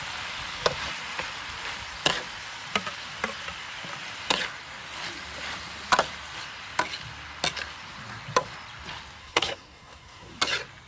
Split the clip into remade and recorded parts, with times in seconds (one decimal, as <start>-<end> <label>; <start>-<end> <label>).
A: 0.0-9.2 recorded; 9.2-10.3 remade; 10.3-10.9 recorded